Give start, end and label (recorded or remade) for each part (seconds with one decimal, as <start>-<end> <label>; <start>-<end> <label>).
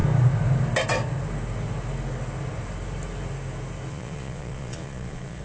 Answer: 0.0-3.9 recorded; 3.9-5.4 remade